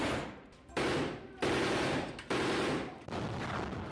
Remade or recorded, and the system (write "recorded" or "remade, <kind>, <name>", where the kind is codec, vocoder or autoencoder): recorded